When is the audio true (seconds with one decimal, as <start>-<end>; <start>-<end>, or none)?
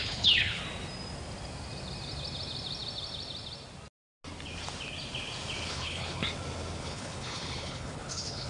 0.6-5.7; 6.2-6.8